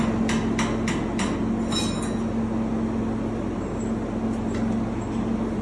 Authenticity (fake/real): real